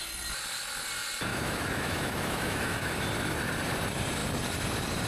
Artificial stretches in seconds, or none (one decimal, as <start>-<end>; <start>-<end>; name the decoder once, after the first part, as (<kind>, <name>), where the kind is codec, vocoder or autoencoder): 1.3-3.0 (autoencoder, DAC-VAE)